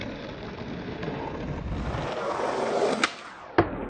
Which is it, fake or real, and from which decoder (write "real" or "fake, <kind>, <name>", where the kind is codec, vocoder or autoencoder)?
real